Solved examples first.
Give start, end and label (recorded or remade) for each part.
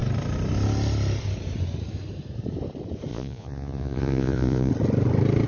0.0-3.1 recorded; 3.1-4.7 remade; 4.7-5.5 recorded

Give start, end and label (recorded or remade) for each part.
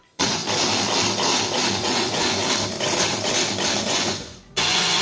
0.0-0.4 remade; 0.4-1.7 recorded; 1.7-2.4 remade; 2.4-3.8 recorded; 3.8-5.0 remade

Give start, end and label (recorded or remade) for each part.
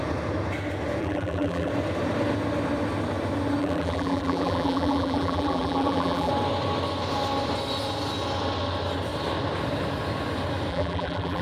0.0-1.0 recorded; 1.0-1.7 remade; 1.7-3.6 recorded; 3.6-6.3 remade; 6.3-10.7 recorded; 10.7-11.4 remade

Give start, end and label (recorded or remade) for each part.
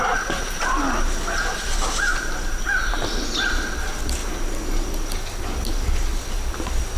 0.0-2.1 recorded; 2.1-2.9 remade; 2.9-7.0 recorded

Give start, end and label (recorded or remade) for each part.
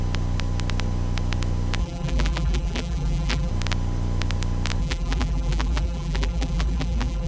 0.0-1.8 recorded; 1.8-3.5 remade; 3.5-4.8 recorded; 4.8-7.3 remade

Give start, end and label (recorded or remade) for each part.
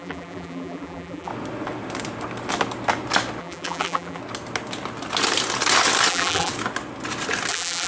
0.0-1.3 remade; 1.3-3.4 recorded; 3.4-4.2 remade; 4.2-6.1 recorded; 6.1-6.5 remade; 6.5-7.5 recorded; 7.5-7.9 remade